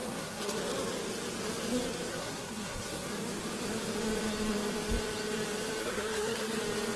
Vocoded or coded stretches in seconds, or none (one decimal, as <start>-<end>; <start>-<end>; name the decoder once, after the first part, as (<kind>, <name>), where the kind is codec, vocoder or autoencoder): 0.0-0.6 (codec, SNAC); 2.1-3.1; 5.8-6.6